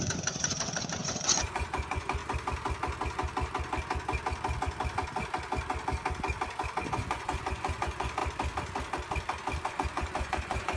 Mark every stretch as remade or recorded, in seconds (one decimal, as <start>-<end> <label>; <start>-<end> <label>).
0.0-2.2 remade; 2.2-6.9 recorded; 6.9-8.2 remade; 8.2-9.7 recorded; 9.7-10.8 remade